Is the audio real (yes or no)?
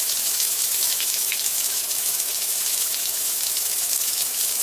no